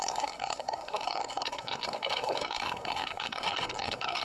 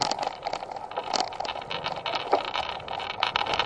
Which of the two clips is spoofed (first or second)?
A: first